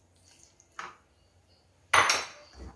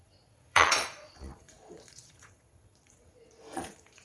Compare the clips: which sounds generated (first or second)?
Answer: second